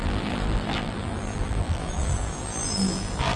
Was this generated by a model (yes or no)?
yes